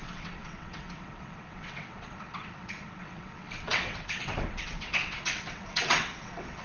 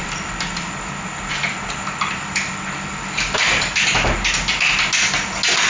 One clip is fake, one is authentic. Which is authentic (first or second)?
second